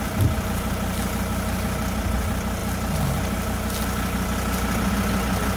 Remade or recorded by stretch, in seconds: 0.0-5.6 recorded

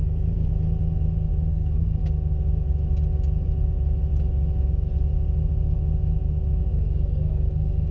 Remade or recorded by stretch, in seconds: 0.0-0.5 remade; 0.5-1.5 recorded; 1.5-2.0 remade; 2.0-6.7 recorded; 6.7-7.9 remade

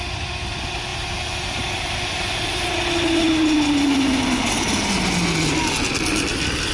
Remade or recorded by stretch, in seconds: 0.0-6.7 recorded

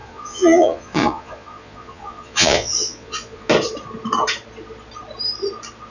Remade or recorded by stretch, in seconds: 0.0-3.5 remade; 3.5-5.9 recorded

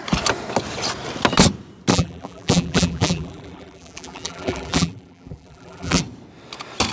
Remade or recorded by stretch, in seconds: 0.0-1.9 recorded; 1.9-6.0 remade; 6.0-6.9 recorded

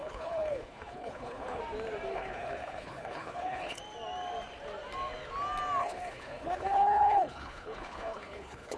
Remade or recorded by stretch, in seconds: 0.0-1.6 remade; 1.6-2.1 recorded; 2.1-3.8 remade; 3.8-5.8 recorded; 5.8-8.8 remade

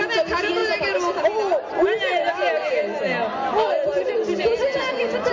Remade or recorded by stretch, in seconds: 0.0-5.3 recorded